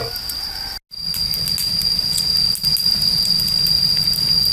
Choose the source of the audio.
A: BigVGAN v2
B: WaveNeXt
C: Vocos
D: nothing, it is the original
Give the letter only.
D